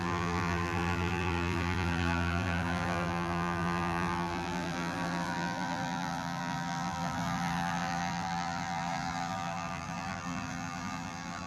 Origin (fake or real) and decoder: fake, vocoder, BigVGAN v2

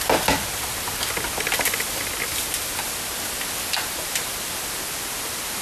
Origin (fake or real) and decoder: real